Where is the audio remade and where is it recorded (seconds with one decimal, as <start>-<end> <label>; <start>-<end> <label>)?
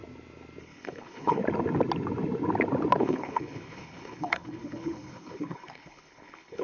0.0-0.6 recorded; 0.6-1.4 remade; 1.4-3.0 recorded; 3.0-6.6 remade